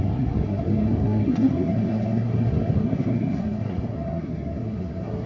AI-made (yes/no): yes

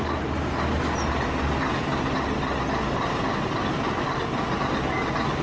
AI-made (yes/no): no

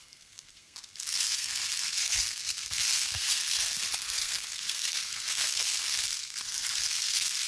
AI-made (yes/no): yes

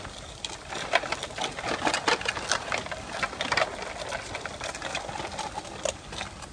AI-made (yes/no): no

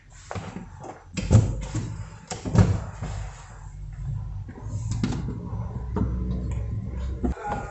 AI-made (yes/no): no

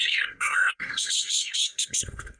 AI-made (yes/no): yes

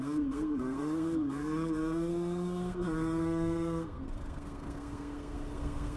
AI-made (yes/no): yes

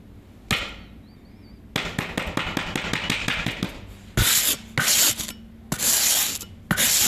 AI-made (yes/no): no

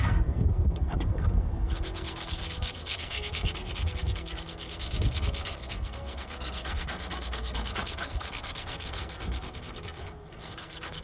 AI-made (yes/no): yes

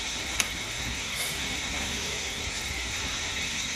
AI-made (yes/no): yes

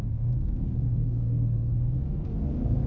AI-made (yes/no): yes